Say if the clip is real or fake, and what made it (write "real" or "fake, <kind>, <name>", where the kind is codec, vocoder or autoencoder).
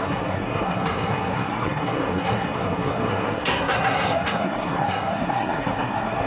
fake, codec, SNAC